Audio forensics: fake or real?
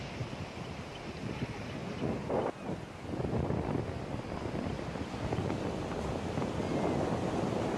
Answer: real